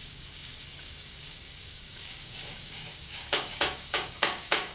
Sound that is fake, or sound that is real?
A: fake